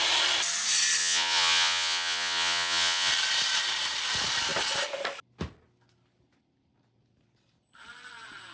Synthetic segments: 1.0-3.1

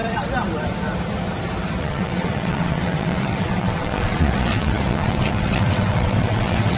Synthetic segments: 1.8-6.8

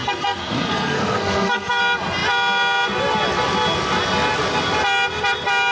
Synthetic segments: 0.0-1.8

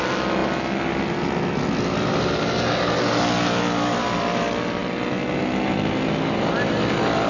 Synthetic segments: none

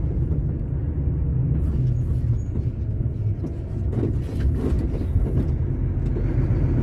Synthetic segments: none

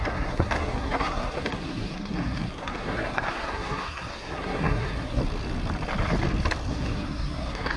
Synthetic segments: 0.0-5.2; 6.7-7.8

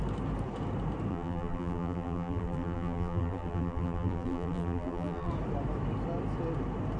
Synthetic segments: 1.1-5.3